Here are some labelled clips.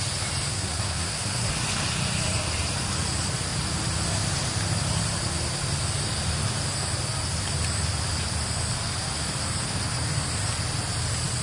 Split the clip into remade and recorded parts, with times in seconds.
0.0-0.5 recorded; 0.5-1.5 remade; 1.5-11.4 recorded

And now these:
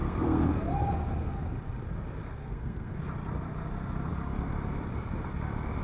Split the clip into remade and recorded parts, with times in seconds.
0.0-0.5 remade; 0.5-2.4 recorded; 2.4-3.0 remade; 3.0-5.8 recorded

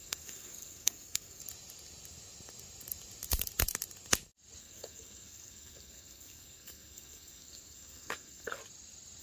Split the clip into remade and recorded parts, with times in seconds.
0.0-1.4 remade; 1.4-4.6 recorded; 4.6-8.6 remade; 8.6-9.2 recorded

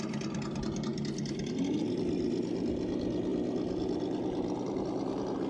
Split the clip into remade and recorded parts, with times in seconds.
0.0-5.5 recorded